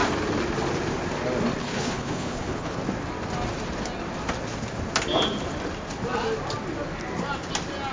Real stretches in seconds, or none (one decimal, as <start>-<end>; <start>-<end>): 0.0-1.6; 2.8-7.9

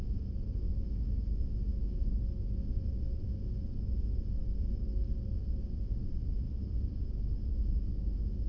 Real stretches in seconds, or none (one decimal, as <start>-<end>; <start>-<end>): 0.0-8.5

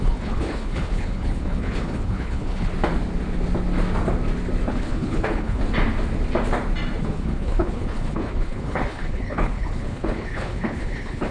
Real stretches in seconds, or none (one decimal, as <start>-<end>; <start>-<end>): 2.7-4.7; 5.6-7.0

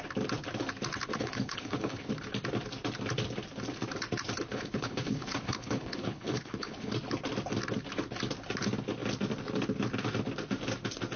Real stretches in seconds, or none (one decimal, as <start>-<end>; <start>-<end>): 0.0-1.1; 2.1-4.5; 6.9-11.2